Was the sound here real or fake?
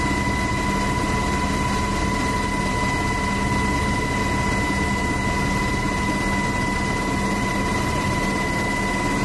real